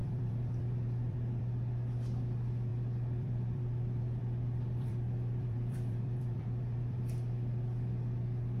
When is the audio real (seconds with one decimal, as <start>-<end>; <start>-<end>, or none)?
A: 1.4-2.7; 7.0-8.6